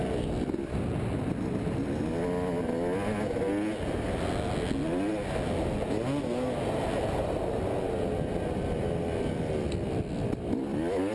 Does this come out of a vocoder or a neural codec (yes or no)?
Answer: no